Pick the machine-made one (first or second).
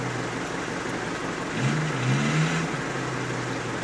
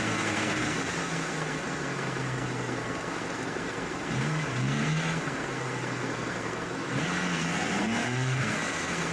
second